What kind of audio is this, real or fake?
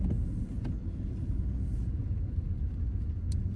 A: real